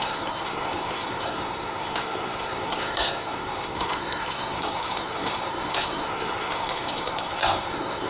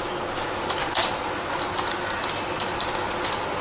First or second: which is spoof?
first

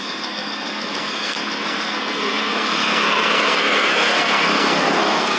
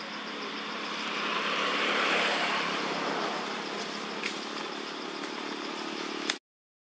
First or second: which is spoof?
first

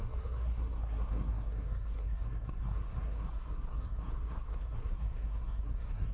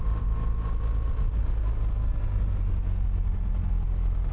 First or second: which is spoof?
first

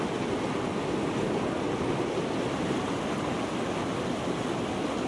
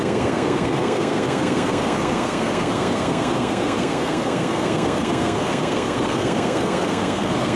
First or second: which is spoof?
second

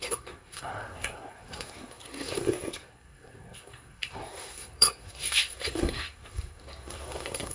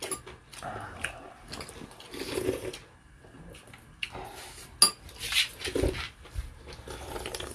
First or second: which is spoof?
first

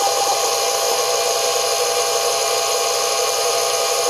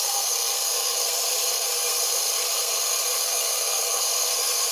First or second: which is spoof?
second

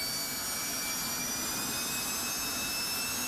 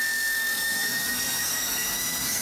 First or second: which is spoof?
second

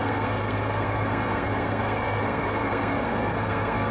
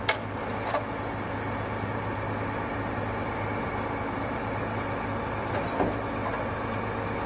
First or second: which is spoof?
first